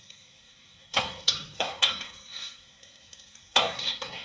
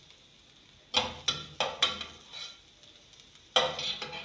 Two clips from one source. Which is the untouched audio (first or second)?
second